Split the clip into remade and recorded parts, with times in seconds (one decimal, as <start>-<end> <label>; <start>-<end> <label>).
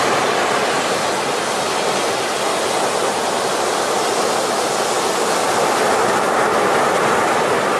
0.0-7.8 recorded